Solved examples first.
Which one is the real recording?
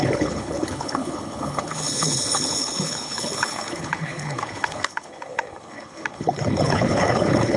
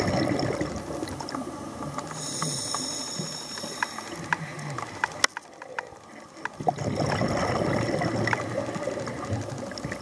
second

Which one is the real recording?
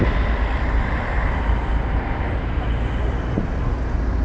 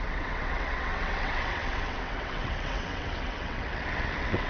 first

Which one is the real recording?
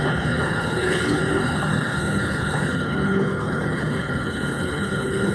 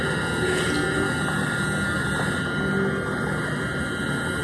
second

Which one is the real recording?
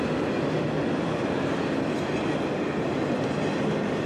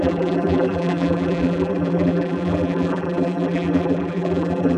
first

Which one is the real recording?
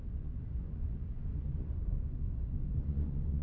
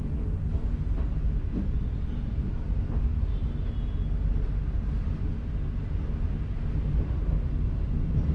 second